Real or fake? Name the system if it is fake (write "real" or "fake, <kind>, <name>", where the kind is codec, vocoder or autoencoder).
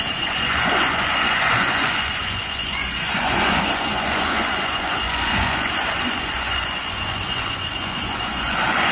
fake, vocoder, Vocos